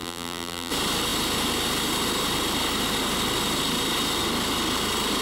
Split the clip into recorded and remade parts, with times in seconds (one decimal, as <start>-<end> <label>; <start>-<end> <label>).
0.0-0.7 remade; 0.7-5.2 recorded